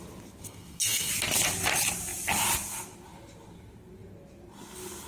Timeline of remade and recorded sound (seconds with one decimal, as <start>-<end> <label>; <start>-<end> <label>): 0.0-0.4 recorded; 0.4-1.1 remade; 1.1-5.1 recorded